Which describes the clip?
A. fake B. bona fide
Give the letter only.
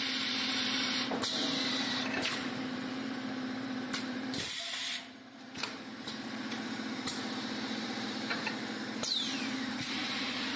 A